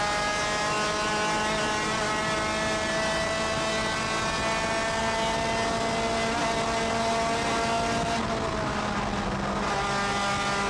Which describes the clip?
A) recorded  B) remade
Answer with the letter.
A